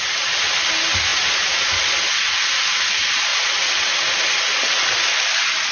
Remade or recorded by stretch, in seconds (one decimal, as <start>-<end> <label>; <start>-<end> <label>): 0.0-5.7 recorded